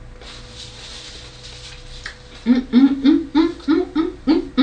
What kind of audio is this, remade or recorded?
recorded